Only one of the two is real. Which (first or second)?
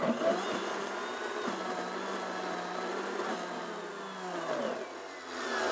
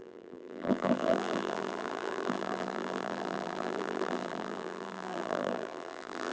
first